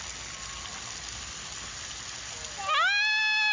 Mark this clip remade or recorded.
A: recorded